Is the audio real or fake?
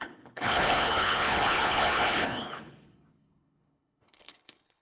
fake